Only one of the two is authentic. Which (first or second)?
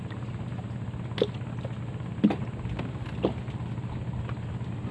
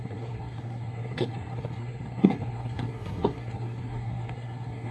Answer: first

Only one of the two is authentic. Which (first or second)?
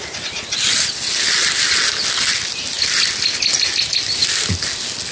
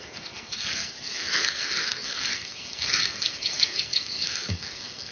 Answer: first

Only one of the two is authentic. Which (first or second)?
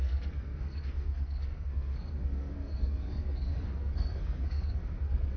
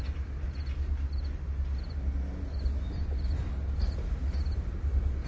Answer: second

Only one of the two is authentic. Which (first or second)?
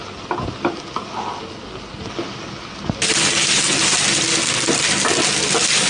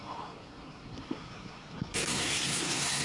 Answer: first